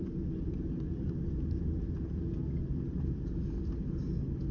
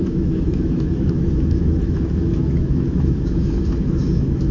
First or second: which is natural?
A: first